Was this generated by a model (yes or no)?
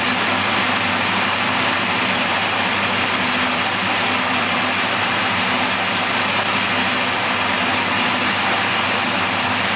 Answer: no